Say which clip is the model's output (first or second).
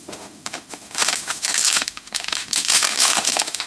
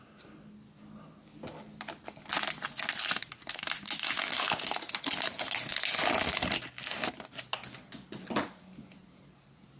first